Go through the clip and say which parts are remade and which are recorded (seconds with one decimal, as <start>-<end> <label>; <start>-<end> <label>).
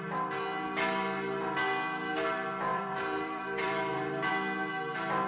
0.0-2.7 recorded; 2.7-4.3 remade; 4.3-5.3 recorded